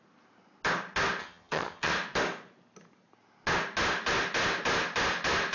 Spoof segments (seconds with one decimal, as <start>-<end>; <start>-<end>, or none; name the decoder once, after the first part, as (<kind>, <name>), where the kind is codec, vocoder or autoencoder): 1.2-1.9 (vocoder, HiFi-GAN)